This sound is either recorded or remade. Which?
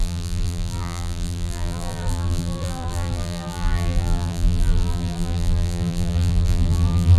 remade